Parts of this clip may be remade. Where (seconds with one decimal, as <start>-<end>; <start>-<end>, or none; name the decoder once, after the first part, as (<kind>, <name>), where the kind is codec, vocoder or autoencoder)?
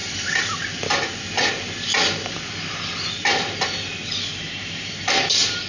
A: none